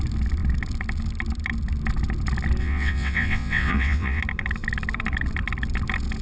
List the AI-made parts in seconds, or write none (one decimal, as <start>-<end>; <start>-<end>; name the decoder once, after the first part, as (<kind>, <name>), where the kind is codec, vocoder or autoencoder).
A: 2.6-4.2 (vocoder, WaveNeXt)